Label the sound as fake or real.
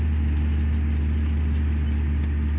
real